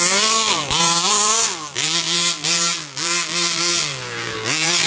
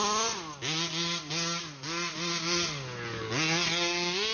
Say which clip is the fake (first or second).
first